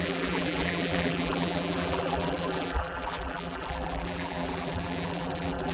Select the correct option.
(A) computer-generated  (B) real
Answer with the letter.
A